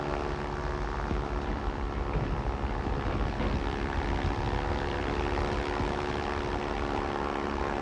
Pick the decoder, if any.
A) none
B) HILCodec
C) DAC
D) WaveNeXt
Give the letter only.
A